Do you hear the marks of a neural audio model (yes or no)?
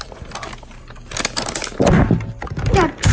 no